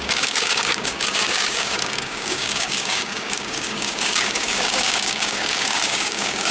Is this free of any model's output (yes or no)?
no